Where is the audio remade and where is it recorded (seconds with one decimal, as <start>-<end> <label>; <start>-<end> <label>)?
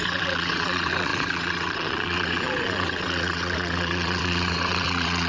0.0-5.3 remade